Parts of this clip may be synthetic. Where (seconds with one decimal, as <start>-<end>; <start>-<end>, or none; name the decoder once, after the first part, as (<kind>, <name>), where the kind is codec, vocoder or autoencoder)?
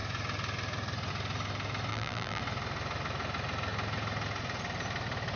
1.9-2.4 (vocoder, BigVGAN v2)